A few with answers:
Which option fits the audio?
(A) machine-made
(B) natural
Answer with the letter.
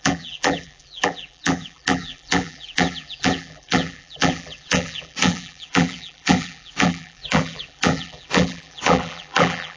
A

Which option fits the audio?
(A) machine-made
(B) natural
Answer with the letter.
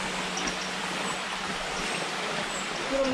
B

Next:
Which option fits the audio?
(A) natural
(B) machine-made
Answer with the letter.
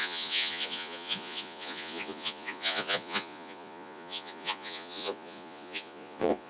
B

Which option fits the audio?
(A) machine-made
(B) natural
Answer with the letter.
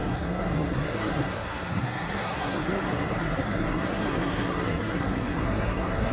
A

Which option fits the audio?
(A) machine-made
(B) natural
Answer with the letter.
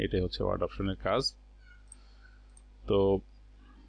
B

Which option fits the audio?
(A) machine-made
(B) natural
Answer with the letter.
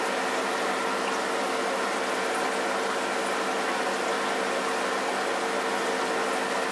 B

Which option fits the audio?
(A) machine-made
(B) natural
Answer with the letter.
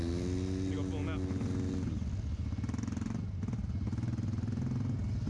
B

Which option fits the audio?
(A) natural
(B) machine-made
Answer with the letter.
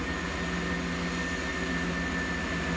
A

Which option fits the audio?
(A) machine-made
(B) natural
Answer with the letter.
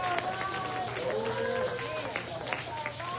B